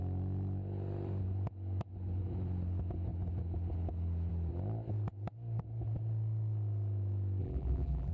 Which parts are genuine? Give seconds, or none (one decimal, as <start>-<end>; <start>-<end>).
0.0-7.4